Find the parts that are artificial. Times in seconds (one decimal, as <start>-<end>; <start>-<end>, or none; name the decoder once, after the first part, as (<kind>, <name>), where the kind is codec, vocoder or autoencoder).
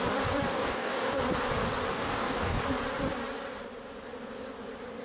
0.5-1.2 (codec, DAC); 1.9-2.6